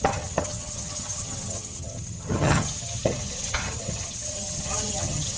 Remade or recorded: remade